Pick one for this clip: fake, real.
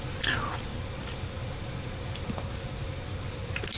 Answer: real